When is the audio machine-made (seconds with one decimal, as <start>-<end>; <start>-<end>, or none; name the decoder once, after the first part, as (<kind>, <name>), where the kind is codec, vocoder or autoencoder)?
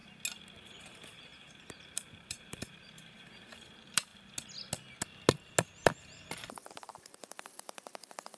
0.8-4.1 (vocoder, BigVGAN v2); 6.7-8.4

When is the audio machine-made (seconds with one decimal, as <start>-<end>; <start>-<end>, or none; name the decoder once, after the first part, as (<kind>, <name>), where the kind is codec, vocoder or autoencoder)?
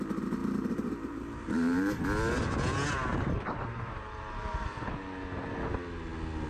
0.4-2.0 (vocoder, BigVGAN v2); 3.1-4.9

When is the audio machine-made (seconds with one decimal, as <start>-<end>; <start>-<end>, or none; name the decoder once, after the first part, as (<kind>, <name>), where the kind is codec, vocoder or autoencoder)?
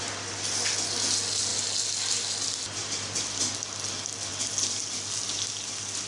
none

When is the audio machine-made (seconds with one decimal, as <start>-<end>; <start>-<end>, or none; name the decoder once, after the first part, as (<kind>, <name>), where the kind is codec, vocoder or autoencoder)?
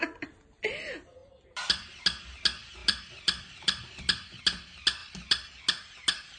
1.2-2.0 (vocoder, BigVGAN v2); 2.8-4.4; 5.0-5.6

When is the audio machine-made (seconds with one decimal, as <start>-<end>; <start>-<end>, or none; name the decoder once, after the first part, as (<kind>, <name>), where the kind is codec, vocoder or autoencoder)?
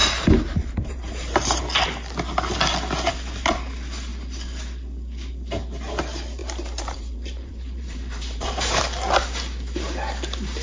0.0-1.6 (vocoder, BigVGAN v2); 6.4-8.8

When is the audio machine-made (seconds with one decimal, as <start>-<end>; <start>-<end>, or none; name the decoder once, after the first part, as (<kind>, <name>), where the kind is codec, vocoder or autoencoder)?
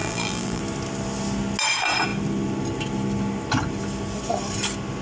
0.0-0.6 (vocoder, BigVGAN v2)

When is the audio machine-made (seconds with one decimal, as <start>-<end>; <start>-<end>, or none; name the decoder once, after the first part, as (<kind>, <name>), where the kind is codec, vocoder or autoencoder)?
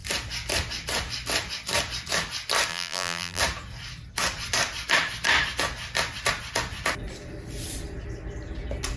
2.7-3.4 (vocoder, BigVGAN v2)